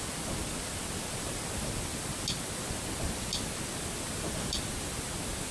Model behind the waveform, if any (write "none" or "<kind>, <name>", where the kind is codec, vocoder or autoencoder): none